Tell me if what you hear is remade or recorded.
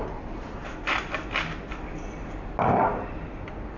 recorded